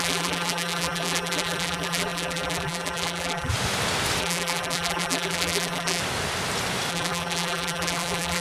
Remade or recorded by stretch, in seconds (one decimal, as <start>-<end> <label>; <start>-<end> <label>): 0.0-3.5 remade; 3.5-4.2 recorded; 4.2-6.0 remade; 6.0-6.9 recorded; 6.9-8.4 remade